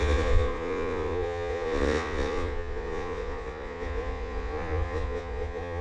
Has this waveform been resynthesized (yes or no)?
yes